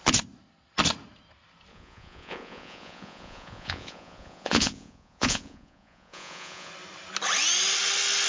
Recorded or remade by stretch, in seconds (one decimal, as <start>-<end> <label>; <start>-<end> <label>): 0.0-1.7 recorded; 1.7-6.7 remade; 6.7-8.3 recorded